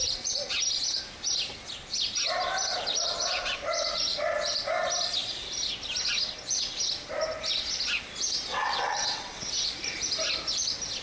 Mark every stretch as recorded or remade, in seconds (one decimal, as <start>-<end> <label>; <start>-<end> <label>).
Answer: 0.0-8.5 recorded; 8.5-9.7 remade; 9.7-11.0 recorded